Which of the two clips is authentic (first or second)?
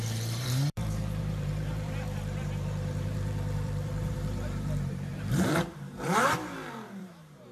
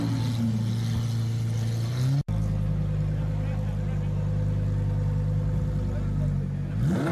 second